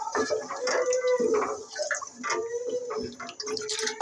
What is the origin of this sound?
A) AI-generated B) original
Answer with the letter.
B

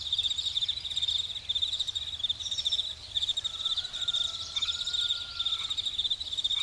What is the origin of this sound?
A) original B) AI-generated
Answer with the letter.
B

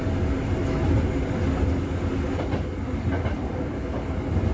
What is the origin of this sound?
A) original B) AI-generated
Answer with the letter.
A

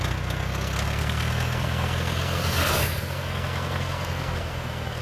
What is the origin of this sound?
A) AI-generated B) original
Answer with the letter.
A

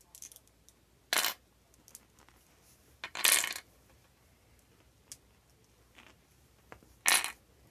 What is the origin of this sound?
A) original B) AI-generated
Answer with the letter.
A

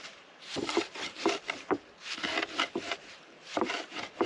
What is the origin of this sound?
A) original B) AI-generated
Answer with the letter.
B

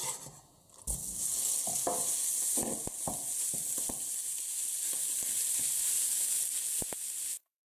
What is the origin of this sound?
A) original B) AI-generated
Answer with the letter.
A